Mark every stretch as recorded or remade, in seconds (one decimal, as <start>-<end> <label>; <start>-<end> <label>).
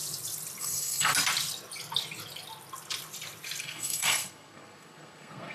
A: 0.0-0.6 recorded; 0.6-1.1 remade; 1.1-3.6 recorded; 3.6-5.5 remade